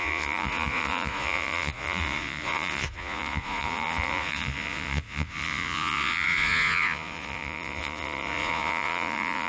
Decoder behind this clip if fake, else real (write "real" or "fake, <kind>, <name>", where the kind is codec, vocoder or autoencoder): fake, vocoder, Vocos